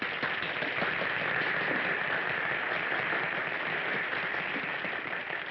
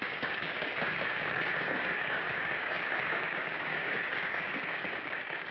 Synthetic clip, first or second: second